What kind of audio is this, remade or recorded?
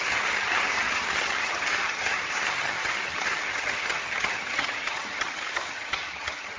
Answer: remade